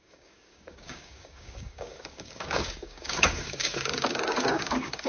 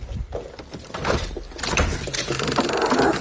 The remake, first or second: first